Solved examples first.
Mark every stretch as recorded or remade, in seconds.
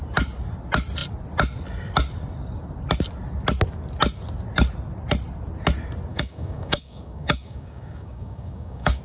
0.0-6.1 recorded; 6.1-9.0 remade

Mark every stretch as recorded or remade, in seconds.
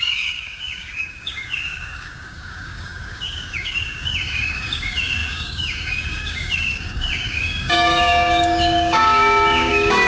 0.0-10.1 remade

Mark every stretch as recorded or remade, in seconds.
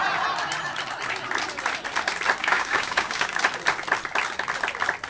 0.0-2.4 recorded; 2.4-3.4 remade; 3.4-5.1 recorded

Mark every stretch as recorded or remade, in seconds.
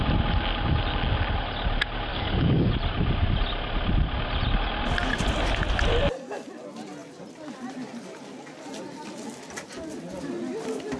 0.0-2.1 recorded; 2.1-2.7 remade; 2.7-11.0 recorded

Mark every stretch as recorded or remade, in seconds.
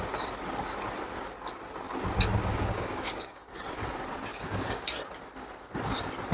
0.0-2.5 recorded; 2.5-3.5 remade; 3.5-4.3 recorded; 4.3-4.8 remade; 4.8-6.3 recorded